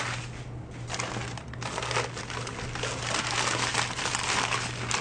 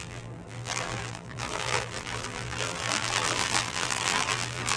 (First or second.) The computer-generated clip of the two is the second